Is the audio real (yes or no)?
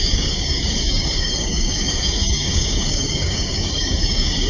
no